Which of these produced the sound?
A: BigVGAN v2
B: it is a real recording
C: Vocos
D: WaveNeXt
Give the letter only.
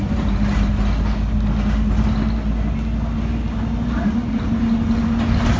B